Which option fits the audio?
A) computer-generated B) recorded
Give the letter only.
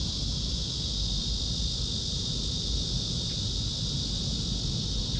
B